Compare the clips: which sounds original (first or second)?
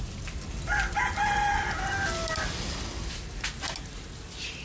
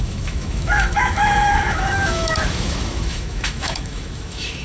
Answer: first